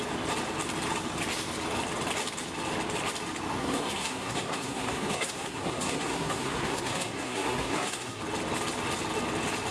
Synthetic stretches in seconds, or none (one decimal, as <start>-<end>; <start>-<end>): 3.6-8.2